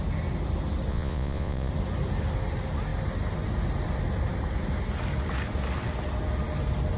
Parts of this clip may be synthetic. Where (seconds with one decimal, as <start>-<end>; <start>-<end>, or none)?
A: 0.9-1.7